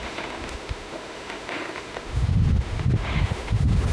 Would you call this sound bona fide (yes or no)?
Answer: no